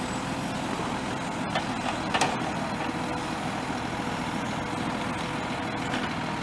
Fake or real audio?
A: real